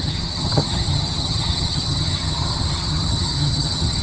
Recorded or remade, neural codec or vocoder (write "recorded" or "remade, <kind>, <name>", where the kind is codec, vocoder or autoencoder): remade, vocoder, HiFi-GAN